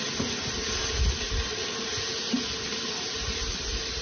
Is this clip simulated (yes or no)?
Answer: no